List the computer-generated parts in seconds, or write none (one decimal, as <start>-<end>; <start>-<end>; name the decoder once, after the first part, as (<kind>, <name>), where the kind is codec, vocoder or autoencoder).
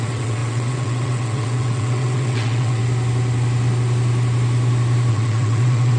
0.0-2.8 (vocoder, WaveNeXt); 5.1-6.0